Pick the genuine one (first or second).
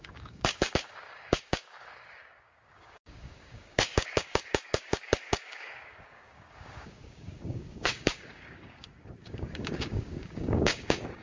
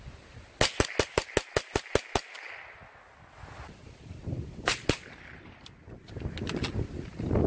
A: second